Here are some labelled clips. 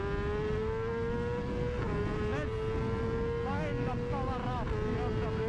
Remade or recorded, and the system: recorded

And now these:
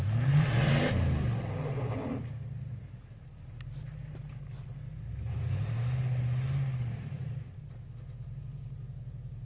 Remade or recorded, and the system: recorded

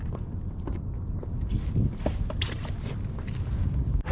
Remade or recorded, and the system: recorded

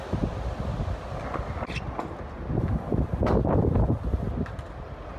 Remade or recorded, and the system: recorded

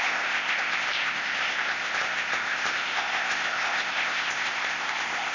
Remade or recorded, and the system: remade, codec, ZipCodec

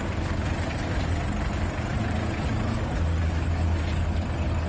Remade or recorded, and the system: recorded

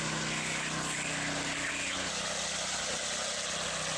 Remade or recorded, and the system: recorded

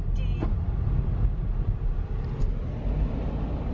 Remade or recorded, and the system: recorded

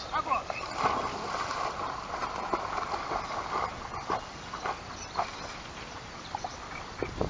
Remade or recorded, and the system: recorded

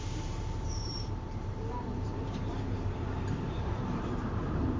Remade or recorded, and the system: remade, vocoder, BigVGAN v2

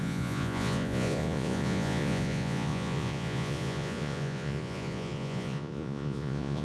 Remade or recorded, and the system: remade, vocoder, Vocos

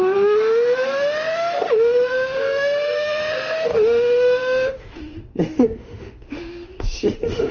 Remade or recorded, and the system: remade, autoencoder, DAC-VAE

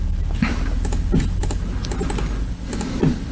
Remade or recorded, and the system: recorded